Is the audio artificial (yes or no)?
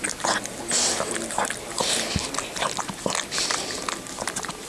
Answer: no